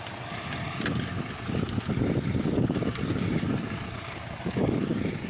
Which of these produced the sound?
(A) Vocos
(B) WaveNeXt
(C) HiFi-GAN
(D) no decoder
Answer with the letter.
D